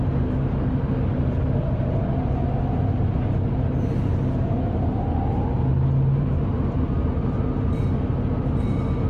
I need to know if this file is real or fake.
real